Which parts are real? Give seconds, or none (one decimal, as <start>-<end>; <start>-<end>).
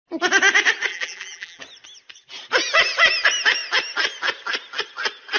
0.0-0.9; 1.6-5.4